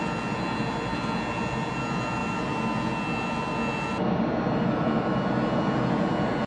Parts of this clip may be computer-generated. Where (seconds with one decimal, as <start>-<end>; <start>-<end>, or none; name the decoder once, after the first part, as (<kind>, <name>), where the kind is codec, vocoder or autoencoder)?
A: none